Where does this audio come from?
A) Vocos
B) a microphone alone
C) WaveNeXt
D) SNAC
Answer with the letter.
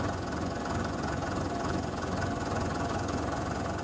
A